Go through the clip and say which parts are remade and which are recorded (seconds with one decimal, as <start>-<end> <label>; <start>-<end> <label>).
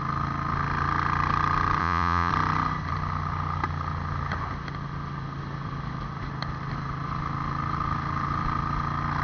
0.0-1.8 recorded; 1.8-2.3 remade; 2.3-9.2 recorded